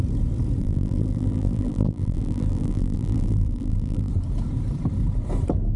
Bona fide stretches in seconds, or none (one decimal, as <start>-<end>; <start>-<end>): 0.0-0.6; 4.1-5.8